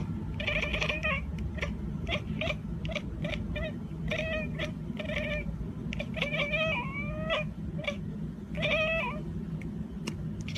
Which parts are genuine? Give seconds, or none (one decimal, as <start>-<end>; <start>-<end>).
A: 0.0-10.6